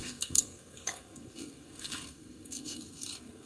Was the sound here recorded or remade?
remade